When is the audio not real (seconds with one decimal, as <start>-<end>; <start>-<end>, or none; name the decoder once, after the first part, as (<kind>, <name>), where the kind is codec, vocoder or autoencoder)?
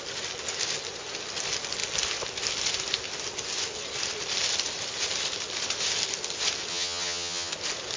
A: 6.7-7.5 (vocoder, HiFi-GAN)